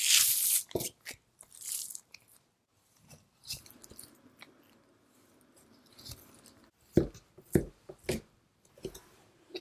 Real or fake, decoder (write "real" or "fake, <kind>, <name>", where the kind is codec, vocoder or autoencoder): real